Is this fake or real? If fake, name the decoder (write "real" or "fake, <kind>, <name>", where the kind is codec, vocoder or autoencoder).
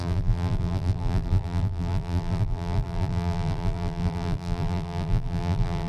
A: fake, vocoder, BigVGAN v2